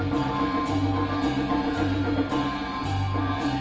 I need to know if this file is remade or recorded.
recorded